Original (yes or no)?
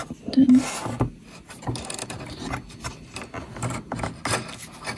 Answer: yes